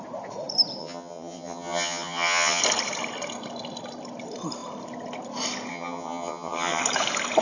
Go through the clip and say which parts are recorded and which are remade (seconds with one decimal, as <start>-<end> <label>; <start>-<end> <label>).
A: 0.0-0.8 recorded; 0.8-2.6 remade; 2.6-5.7 recorded; 5.7-6.8 remade; 6.8-7.4 recorded